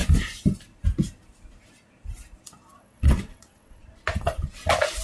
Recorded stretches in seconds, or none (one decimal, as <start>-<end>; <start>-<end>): 0.0-2.7; 3.8-5.0